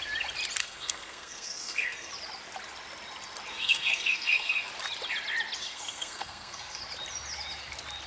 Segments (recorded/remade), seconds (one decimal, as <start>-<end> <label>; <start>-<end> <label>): 0.0-0.6 recorded; 0.6-2.1 remade; 2.1-3.5 recorded; 3.5-4.7 remade; 4.7-5.6 recorded; 5.6-6.8 remade; 6.8-8.1 recorded